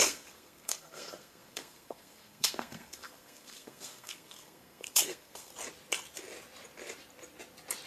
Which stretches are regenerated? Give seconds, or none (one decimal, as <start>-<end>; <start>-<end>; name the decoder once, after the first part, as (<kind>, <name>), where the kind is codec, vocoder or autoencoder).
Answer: 0.0-5.5 (codec, SNAC)